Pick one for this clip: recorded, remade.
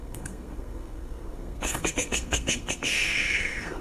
remade